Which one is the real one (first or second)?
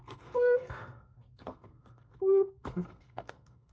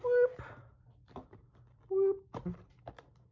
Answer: second